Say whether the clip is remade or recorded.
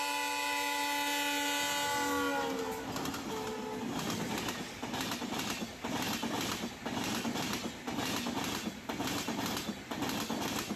recorded